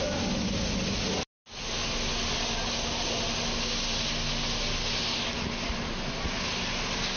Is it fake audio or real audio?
real